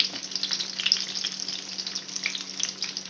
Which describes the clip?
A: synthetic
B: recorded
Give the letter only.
B